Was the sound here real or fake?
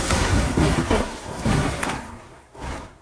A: fake